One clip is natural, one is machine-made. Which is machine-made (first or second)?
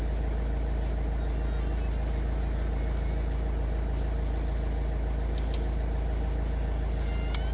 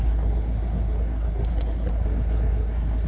second